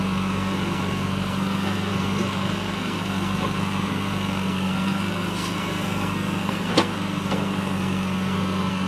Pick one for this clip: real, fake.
fake